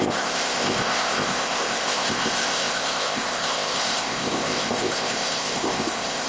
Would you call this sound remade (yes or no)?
yes